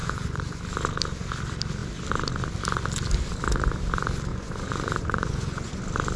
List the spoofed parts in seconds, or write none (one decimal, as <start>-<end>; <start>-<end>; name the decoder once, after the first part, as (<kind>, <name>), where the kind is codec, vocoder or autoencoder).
0.0-0.6 (vocoder, Vocos); 4.3-5.8